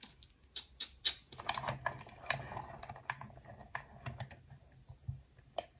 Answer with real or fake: real